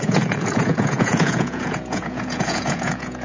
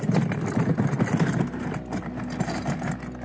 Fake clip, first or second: first